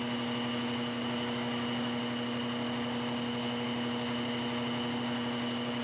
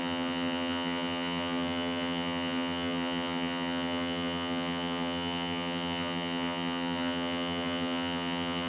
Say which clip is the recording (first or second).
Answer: first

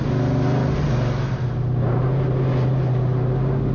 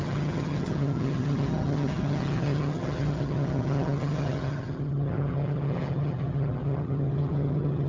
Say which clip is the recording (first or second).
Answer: first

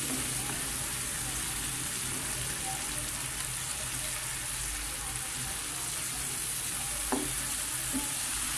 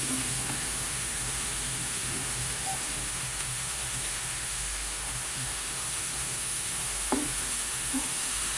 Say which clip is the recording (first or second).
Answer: first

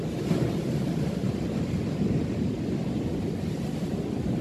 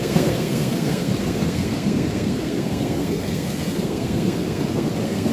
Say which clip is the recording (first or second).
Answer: first